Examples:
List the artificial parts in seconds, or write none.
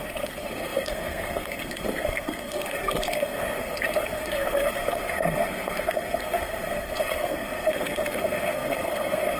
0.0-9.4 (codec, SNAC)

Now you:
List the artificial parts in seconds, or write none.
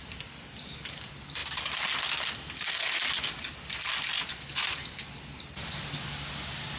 none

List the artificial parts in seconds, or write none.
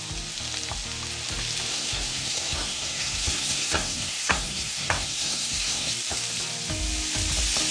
1.7-5.9 (codec, SNAC)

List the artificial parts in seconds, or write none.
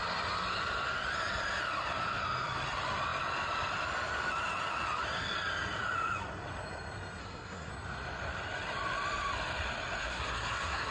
7.2-7.7 (codec, SNAC); 10.0-10.9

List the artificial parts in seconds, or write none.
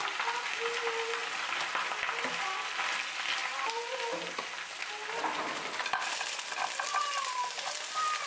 none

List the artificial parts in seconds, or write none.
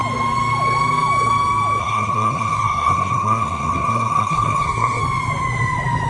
1.8-5.0 (codec, SNAC)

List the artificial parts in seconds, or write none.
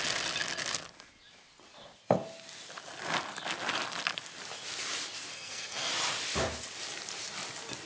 5.3-5.9 (codec, SNAC)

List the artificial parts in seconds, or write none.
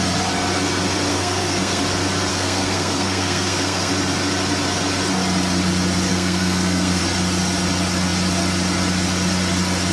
1.1-1.8 (codec, SNAC); 2.3-3.9; 6.1-7.0